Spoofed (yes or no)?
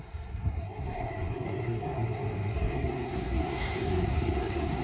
yes